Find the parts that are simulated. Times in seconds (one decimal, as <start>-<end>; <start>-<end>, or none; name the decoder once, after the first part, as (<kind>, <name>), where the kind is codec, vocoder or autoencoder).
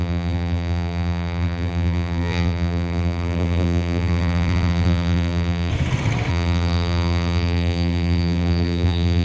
0.0-5.7 (vocoder, BigVGAN v2); 6.3-9.2